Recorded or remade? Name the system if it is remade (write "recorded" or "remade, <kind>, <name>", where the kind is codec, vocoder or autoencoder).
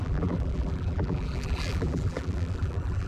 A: remade, vocoder, BigVGAN v2